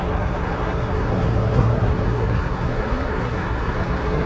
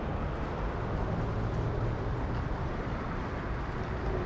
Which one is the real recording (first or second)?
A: second